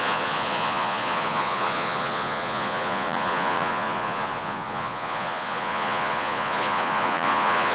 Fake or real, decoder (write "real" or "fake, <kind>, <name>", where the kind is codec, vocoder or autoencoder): fake, vocoder, Vocos